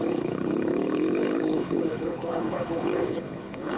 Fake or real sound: fake